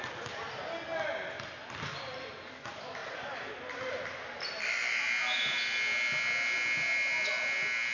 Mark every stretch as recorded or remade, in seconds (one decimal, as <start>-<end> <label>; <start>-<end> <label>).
0.0-3.0 recorded; 3.0-3.5 remade; 3.5-7.9 recorded